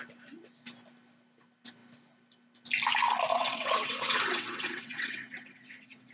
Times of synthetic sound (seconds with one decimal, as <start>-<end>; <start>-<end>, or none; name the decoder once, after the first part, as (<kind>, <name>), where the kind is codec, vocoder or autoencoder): 3.3-6.1 (vocoder, WaveNeXt)